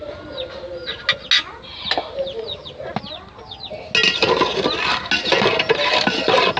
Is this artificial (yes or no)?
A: no